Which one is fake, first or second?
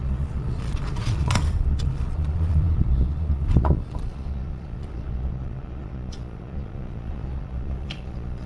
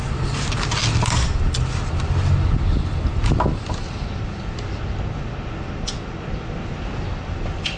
first